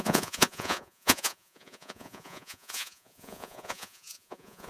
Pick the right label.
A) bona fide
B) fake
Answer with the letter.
B